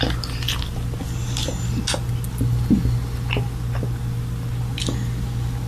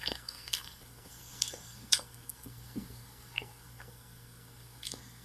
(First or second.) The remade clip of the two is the second